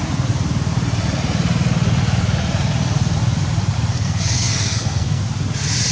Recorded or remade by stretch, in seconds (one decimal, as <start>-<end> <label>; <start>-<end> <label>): 0.0-3.9 recorded; 3.9-5.2 remade; 5.2-5.9 recorded